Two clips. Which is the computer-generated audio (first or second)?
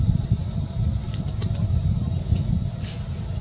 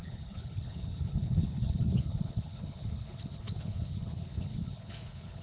second